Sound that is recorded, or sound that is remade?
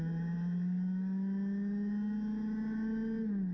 recorded